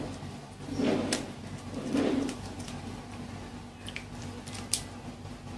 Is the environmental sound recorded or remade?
recorded